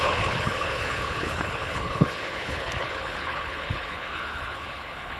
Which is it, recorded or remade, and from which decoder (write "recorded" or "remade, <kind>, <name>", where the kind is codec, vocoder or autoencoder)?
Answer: remade, codec, HILCodec